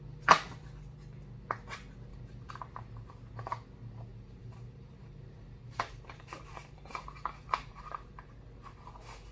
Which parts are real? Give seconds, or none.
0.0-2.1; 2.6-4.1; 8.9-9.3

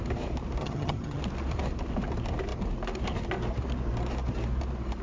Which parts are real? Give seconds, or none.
0.0-0.6; 1.2-5.0

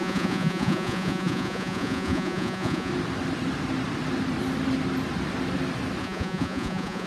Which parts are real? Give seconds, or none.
2.9-6.0

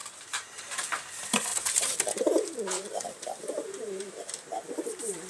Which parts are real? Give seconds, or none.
0.6-1.5; 4.7-5.3

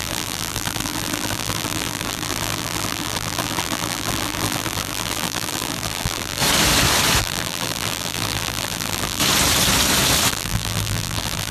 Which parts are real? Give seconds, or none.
6.4-7.2; 9.2-10.3

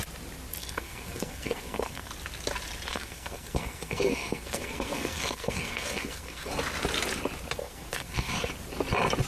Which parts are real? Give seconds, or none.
0.0-0.6; 2.1-2.9; 6.5-7.6; 8.5-9.3